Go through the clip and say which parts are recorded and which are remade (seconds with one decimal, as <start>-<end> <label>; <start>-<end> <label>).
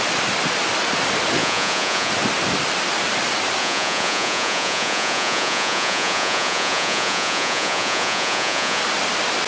0.0-1.4 recorded; 1.4-2.1 remade; 2.1-3.6 recorded; 3.6-8.8 remade; 8.8-9.5 recorded